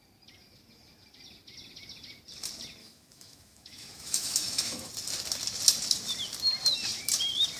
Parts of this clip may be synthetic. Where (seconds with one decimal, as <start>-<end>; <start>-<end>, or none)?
2.8-4.9